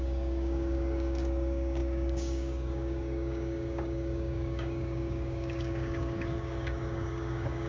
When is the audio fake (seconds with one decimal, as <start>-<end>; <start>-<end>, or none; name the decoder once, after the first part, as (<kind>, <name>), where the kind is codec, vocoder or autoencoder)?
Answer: 0.0-7.7 (codec, DAC)

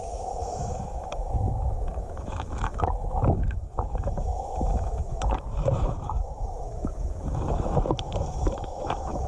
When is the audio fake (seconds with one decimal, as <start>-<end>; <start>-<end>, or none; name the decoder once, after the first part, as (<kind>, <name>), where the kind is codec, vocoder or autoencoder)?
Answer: 0.0-9.3 (autoencoder, DAC-VAE)

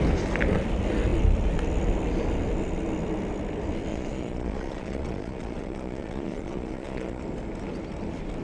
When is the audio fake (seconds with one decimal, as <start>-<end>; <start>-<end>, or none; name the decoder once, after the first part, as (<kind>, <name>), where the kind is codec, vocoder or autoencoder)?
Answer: 3.9-7.2 (vocoder, Vocos)

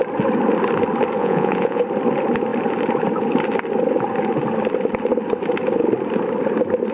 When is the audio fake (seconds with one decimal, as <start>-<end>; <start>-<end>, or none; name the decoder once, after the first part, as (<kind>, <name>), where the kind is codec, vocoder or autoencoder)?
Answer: 1.2-1.8 (vocoder, Vocos)

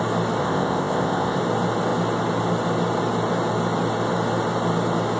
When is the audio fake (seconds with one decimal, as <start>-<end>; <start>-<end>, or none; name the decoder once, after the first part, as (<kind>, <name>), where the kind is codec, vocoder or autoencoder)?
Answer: 0.4-1.4 (codec, ZipCodec)

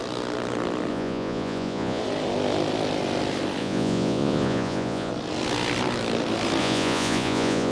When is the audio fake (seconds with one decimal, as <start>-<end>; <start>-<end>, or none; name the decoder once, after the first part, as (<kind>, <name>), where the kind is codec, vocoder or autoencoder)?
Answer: 0.9-2.0 (vocoder, Vocos); 3.6-5.1; 6.6-7.7